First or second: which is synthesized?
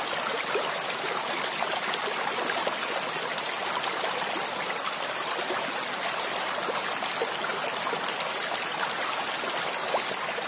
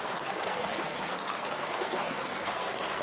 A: second